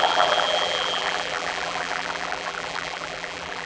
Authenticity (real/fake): fake